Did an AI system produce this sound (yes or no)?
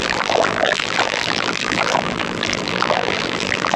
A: yes